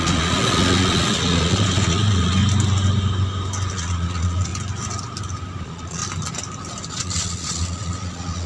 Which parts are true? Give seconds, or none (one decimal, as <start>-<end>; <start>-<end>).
2.4-3.7; 4.5-5.6; 6.0-6.9